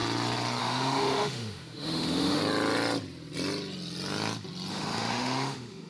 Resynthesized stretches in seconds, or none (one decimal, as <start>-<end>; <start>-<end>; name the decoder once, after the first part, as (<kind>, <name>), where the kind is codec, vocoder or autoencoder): 0.6-2.4 (autoencoder, DAC-VAE); 4.7-5.9